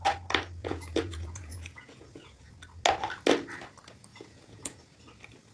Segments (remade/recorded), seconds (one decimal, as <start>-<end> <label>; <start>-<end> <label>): 0.0-0.6 recorded; 0.6-2.5 remade; 2.5-4.1 recorded; 4.1-4.9 remade; 4.9-5.5 recorded